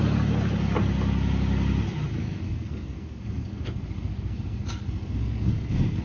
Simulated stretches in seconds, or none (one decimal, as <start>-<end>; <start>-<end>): 2.2-6.0